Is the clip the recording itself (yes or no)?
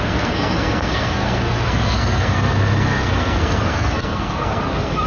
no